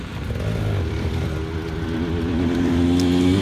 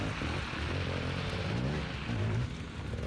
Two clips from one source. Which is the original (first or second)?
second